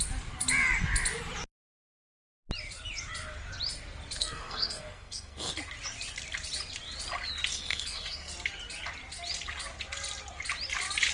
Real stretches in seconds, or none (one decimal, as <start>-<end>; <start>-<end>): 0.0-4.2; 5.5-7.5; 8.3-11.1